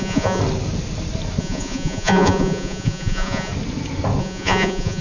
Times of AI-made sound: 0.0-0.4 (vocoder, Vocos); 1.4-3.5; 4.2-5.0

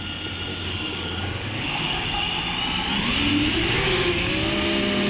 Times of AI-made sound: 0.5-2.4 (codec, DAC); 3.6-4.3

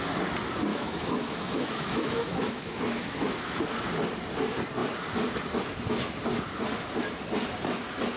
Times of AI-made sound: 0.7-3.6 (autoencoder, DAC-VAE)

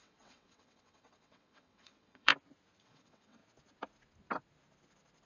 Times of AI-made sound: 0.0-2.3 (vocoder, WaveNeXt); 2.8-3.4

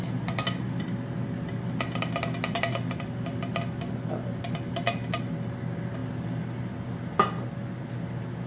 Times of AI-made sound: none

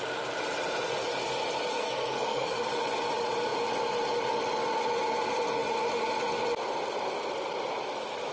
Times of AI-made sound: 1.7-2.7 (codec, SNAC)

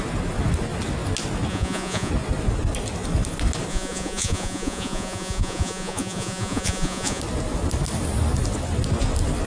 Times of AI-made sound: 1.5-2.1 (vocoder, Vocos); 3.7-7.2

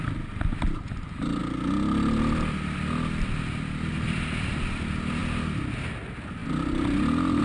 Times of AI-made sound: none